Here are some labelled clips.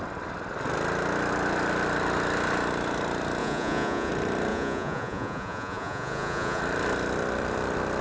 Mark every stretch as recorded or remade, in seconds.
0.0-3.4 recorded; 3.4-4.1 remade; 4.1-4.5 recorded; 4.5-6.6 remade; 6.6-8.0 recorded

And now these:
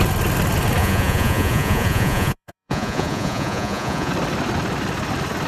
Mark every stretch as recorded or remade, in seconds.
0.0-0.8 recorded; 0.8-4.1 remade; 4.1-5.5 recorded

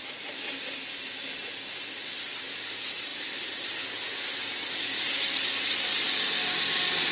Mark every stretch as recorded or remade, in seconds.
0.0-7.1 recorded

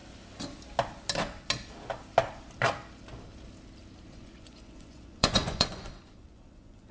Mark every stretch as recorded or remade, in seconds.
0.0-4.1 recorded; 4.1-6.9 remade